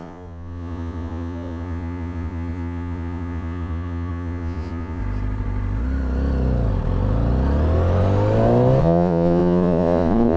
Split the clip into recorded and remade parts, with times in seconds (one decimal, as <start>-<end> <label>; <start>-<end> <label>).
0.0-5.0 remade; 5.0-8.8 recorded; 8.8-10.4 remade